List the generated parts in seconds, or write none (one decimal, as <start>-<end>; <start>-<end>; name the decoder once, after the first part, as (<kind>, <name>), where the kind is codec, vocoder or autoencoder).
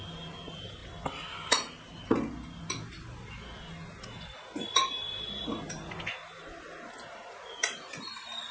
none